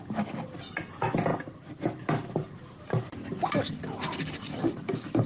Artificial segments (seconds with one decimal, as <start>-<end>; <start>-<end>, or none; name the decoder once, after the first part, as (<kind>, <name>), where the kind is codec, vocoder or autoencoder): none